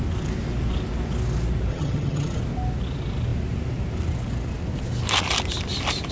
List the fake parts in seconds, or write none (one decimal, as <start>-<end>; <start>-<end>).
1.7-2.4